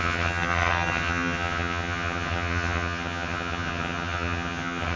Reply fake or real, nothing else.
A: fake